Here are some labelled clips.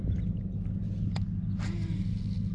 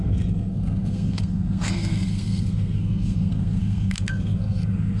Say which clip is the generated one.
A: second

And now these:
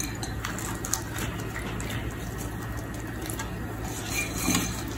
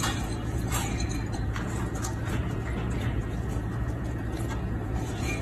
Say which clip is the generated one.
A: second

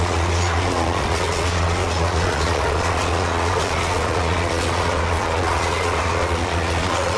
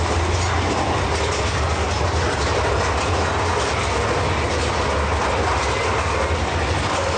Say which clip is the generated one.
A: first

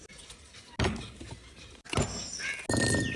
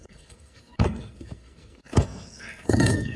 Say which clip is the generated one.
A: second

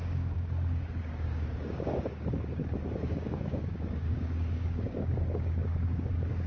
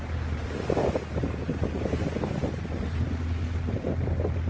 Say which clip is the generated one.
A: first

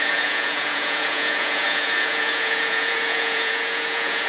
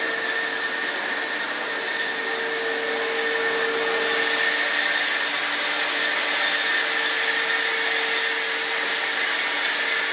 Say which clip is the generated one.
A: first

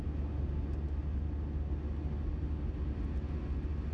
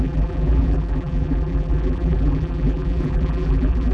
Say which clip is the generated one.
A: second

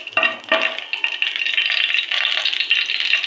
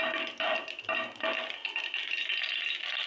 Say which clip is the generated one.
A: first